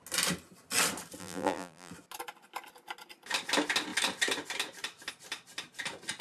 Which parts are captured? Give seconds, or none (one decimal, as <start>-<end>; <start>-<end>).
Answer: 0.0-1.2; 1.9-6.2